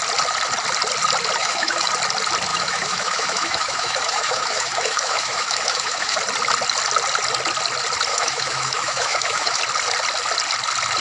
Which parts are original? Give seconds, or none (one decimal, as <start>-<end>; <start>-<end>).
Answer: 0.0-1.4; 1.9-2.5; 6.2-8.1; 9.6-11.0